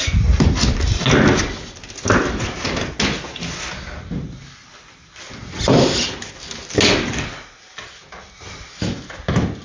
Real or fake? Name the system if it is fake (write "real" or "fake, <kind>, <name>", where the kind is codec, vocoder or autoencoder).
real